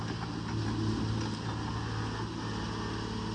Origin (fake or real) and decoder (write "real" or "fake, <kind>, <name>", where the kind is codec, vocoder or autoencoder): real